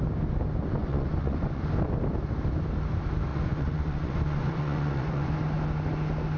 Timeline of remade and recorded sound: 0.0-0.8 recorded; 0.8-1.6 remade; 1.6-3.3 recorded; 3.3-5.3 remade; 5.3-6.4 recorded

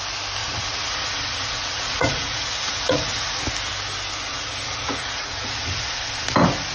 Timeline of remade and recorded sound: 0.0-0.4 recorded; 0.4-3.4 remade; 3.4-4.3 recorded; 4.3-6.3 remade; 6.3-6.7 recorded

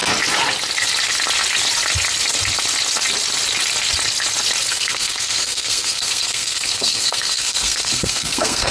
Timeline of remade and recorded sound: 0.0-4.7 recorded; 4.7-8.7 remade

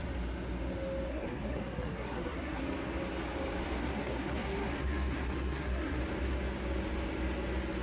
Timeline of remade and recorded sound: 0.0-1.1 recorded; 1.1-2.6 remade; 2.6-3.8 recorded; 3.8-6.0 remade; 6.0-7.8 recorded

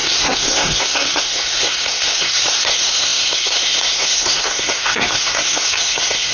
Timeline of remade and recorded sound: 0.0-6.3 remade

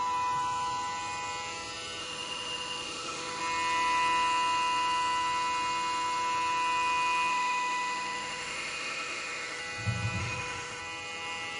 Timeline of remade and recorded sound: 0.0-2.0 recorded; 2.0-3.4 remade; 3.4-7.3 recorded; 7.3-9.6 remade; 9.6-10.2 recorded; 10.2-10.8 remade; 10.8-11.6 recorded

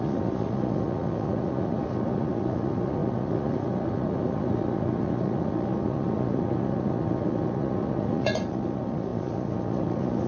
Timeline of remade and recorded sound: 0.0-10.3 remade